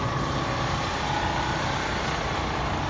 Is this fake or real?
real